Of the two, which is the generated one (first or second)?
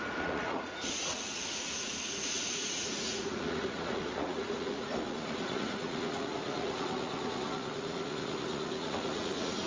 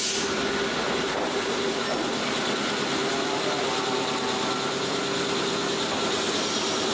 first